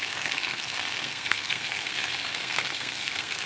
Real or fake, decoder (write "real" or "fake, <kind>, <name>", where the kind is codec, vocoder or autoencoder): fake, codec, SNAC